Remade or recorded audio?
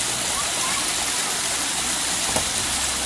recorded